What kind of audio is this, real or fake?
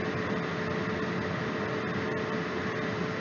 real